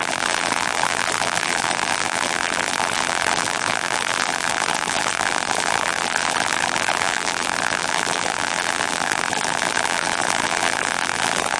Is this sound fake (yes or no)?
yes